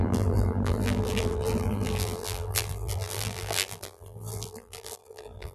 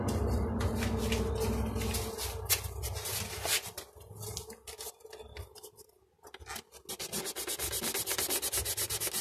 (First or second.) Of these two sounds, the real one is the second